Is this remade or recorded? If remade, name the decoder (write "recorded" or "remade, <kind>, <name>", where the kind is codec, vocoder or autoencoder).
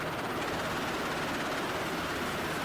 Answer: recorded